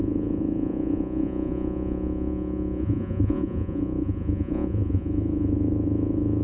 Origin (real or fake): fake